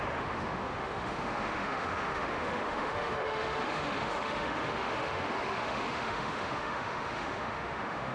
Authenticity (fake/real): fake